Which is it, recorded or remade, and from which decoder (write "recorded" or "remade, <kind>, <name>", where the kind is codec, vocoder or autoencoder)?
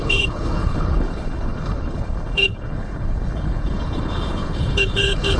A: remade, codec, HILCodec